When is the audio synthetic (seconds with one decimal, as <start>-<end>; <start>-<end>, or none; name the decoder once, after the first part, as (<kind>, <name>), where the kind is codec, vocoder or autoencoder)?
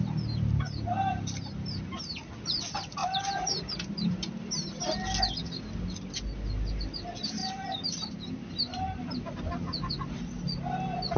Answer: 3.0-3.7 (vocoder, BigVGAN v2); 7.4-9.3